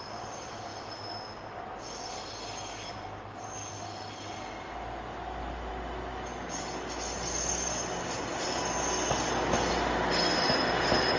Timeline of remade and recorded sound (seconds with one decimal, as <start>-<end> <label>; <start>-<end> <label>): 0.0-11.2 recorded